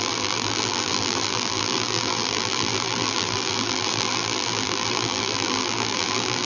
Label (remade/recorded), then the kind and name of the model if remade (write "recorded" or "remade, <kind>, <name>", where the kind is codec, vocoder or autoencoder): remade, vocoder, BigVGAN v2